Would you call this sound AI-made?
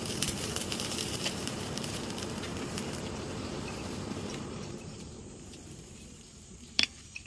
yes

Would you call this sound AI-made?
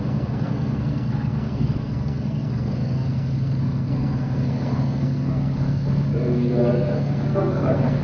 yes